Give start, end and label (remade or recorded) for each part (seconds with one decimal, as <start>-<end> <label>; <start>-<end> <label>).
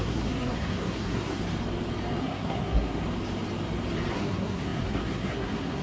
0.0-1.4 remade; 1.4-2.2 recorded; 2.2-3.0 remade; 3.0-4.1 recorded; 4.1-5.8 remade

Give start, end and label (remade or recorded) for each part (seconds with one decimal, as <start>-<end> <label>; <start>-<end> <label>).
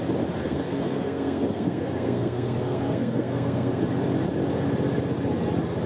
0.0-0.4 recorded; 0.4-3.8 remade; 3.8-5.9 recorded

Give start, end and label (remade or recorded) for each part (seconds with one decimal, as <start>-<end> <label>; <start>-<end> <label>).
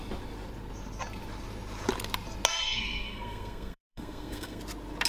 0.0-2.5 recorded; 2.5-4.6 remade; 4.6-5.1 recorded